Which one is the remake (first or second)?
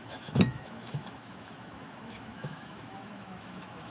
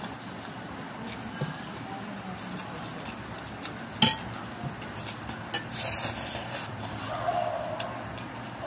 first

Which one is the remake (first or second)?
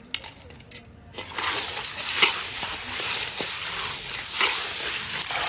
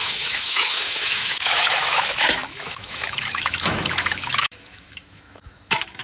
second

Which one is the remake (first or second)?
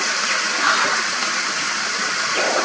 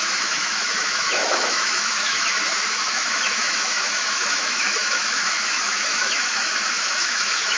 second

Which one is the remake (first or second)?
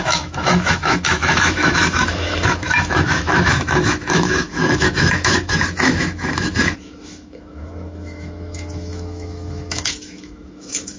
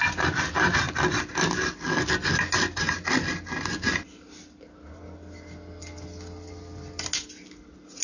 first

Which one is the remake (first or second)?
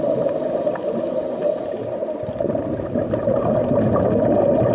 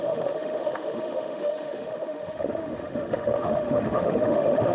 second